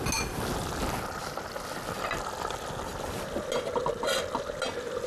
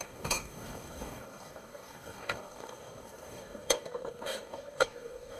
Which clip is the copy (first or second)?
second